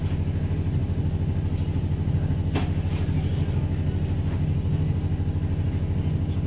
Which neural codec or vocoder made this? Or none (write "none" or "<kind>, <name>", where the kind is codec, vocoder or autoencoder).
none